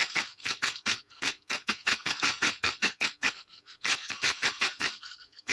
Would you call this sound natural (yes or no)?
no